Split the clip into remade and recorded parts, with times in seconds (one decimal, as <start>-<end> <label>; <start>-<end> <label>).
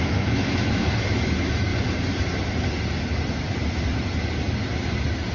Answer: 0.0-1.7 remade; 1.7-5.3 recorded